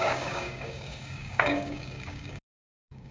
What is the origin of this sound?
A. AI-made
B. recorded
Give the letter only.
A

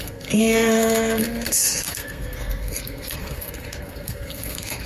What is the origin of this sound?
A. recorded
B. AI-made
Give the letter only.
B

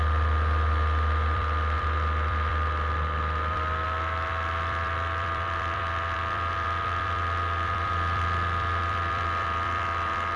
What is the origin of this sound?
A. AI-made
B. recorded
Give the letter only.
A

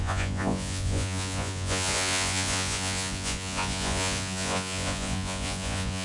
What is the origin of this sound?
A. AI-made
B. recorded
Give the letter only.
A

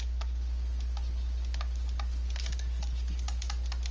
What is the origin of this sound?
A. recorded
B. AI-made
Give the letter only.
A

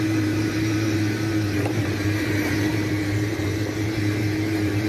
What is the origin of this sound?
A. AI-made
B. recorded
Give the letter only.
A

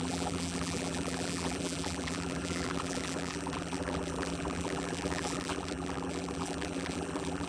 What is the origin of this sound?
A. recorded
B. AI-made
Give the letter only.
B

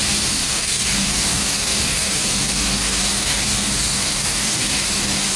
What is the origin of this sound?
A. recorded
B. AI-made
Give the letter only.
B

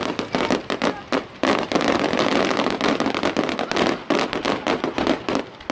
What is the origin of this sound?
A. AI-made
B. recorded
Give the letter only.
B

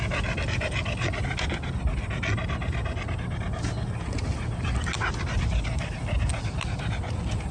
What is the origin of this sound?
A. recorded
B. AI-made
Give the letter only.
A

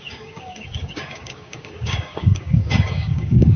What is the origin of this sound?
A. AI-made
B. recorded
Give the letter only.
A